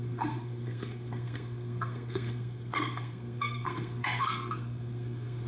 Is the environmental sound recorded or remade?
remade